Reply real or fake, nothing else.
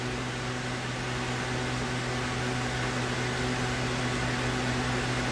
real